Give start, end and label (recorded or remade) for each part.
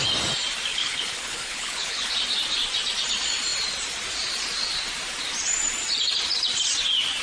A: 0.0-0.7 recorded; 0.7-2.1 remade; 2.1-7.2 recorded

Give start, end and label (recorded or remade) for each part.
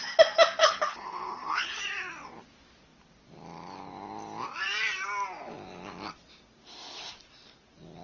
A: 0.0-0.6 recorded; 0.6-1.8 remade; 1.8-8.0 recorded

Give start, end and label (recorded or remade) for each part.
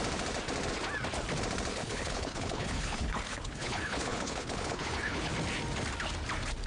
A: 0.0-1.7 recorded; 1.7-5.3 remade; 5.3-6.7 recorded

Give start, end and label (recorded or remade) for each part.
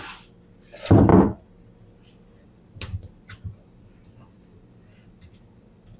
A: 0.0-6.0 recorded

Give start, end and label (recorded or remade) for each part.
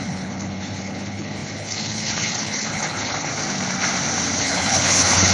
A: 0.0-3.3 remade; 3.3-4.4 recorded; 4.4-5.3 remade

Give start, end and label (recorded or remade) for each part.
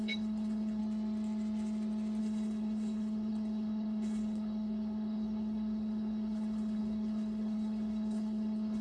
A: 0.0-0.8 remade; 0.8-2.2 recorded; 2.2-8.8 remade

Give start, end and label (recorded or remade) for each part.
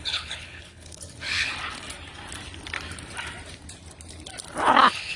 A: 0.0-1.5 remade; 1.5-4.6 recorded; 4.6-5.2 remade